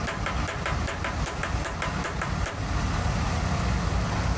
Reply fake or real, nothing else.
real